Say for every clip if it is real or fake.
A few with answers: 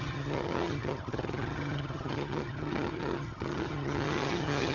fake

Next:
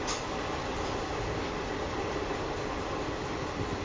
real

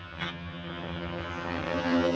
fake